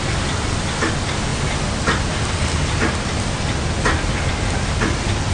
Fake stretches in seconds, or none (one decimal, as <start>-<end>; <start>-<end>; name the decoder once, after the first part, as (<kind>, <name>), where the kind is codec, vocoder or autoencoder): none